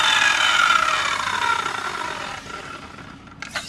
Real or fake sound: real